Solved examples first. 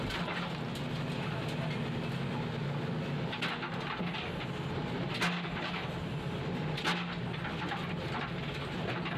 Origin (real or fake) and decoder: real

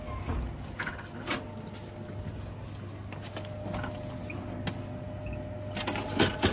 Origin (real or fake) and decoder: real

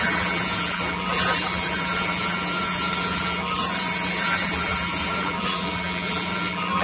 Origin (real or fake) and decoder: fake, vocoder, BigVGAN v2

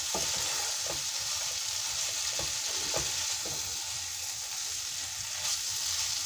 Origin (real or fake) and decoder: real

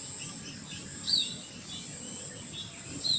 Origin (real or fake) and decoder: real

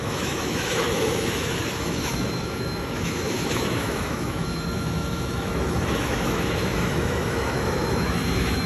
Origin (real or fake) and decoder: fake, autoencoder, DAC-VAE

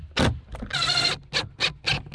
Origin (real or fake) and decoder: real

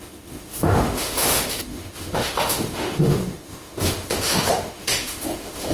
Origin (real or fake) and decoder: fake, autoencoder, DAC-VAE